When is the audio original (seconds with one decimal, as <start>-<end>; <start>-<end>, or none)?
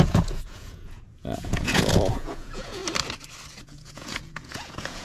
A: 2.8-3.6